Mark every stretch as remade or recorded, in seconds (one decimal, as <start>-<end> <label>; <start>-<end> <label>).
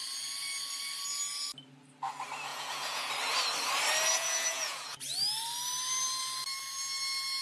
0.0-2.5 recorded; 2.5-3.1 remade; 3.1-4.1 recorded; 4.1-5.0 remade; 5.0-7.4 recorded